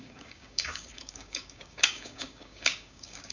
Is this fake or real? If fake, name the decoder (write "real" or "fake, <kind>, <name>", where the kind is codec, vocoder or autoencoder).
fake, codec, DAC